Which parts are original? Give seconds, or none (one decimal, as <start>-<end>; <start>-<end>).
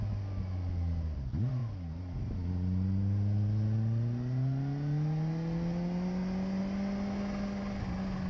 0.0-8.3